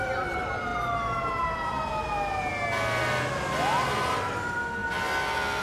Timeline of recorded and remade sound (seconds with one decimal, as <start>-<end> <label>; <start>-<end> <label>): 0.0-5.6 recorded